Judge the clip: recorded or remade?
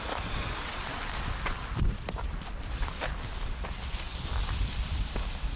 remade